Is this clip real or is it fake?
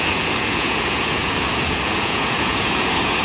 fake